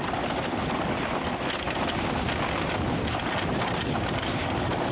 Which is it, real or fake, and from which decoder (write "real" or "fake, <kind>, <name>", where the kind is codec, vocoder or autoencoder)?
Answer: real